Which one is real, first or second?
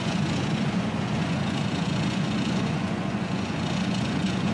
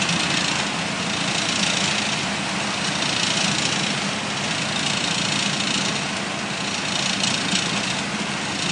second